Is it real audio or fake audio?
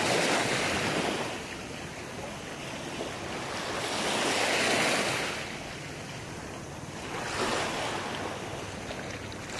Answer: real